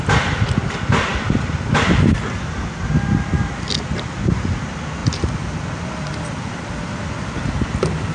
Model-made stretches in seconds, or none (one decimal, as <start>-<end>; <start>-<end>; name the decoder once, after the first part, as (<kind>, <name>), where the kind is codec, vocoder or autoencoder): 5.0-8.1 (vocoder, BigVGAN v2)